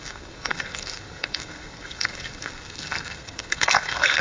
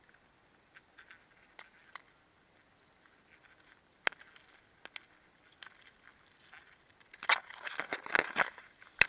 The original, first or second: second